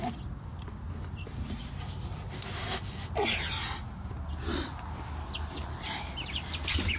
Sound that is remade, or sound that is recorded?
recorded